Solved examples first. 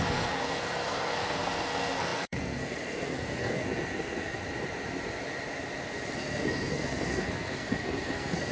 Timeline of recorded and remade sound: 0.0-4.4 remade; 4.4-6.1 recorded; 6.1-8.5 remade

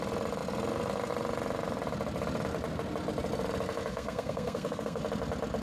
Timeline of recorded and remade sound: 0.0-3.9 recorded; 3.9-5.0 remade; 5.0-5.6 recorded

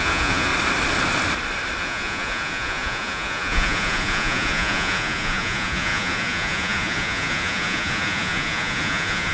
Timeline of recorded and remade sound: 0.0-0.5 remade; 0.5-1.8 recorded; 1.8-9.3 remade

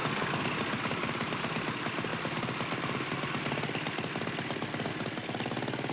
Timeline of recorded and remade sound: 0.0-5.9 recorded

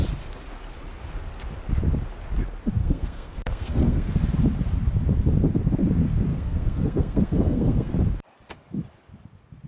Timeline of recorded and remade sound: 0.0-2.8 recorded; 2.8-4.1 remade; 4.1-6.3 recorded; 6.3-7.9 remade; 7.9-9.7 recorded

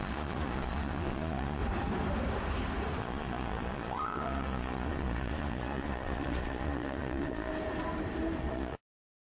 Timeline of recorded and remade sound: 0.0-1.6 remade; 1.6-3.0 recorded; 3.0-7.5 remade; 7.5-8.4 recorded; 8.4-9.3 remade

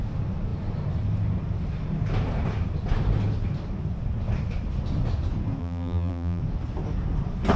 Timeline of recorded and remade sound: 0.0-5.6 recorded; 5.6-6.4 remade; 6.4-7.6 recorded